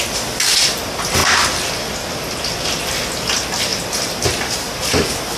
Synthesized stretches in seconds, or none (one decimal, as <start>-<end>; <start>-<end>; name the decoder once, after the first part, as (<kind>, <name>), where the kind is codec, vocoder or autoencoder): none